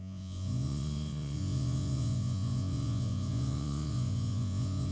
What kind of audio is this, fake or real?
fake